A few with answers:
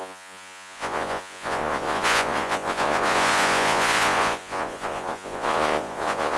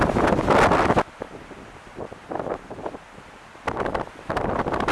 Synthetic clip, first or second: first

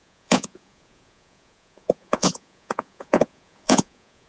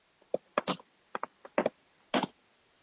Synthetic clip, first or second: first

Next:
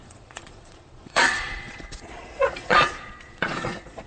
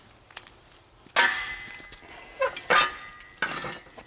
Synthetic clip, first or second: first